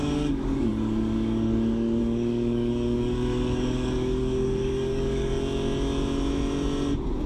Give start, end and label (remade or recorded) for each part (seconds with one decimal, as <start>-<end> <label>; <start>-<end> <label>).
0.0-5.3 remade; 5.3-7.3 recorded